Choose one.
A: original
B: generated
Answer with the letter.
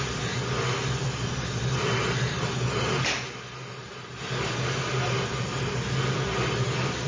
A